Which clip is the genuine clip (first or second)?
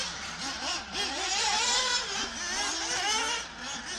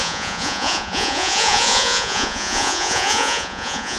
first